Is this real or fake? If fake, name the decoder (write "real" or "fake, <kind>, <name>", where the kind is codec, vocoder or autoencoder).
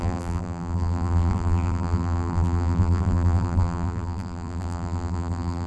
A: fake, vocoder, BigVGAN v2